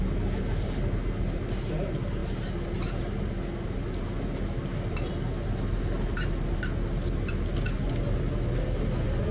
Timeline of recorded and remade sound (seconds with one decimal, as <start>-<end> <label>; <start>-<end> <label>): 0.0-9.3 recorded